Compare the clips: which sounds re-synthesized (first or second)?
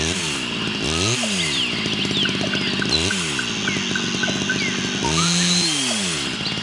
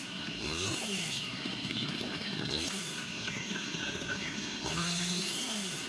second